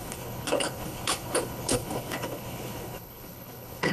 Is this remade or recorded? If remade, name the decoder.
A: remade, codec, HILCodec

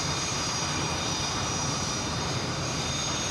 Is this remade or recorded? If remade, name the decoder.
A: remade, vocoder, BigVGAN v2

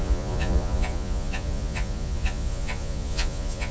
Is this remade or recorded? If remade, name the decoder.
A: remade, vocoder, Vocos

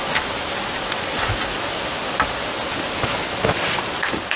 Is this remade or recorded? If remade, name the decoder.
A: recorded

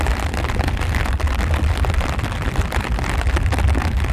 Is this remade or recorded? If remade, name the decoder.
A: recorded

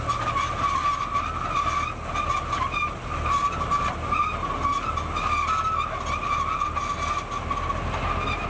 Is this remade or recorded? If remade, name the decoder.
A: recorded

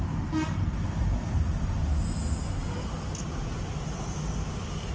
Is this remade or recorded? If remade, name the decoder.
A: recorded